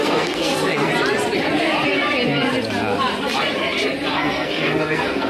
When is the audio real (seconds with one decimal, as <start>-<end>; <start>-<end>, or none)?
0.9-4.1